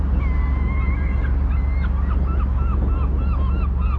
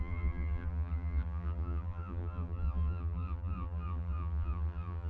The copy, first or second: second